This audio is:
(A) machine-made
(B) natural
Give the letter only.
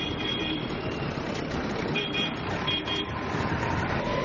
A